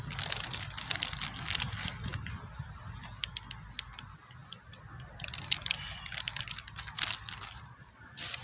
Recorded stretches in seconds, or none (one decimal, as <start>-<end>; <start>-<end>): 0.0-8.4